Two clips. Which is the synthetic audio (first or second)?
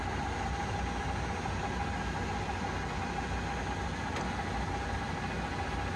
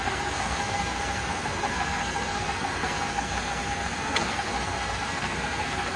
second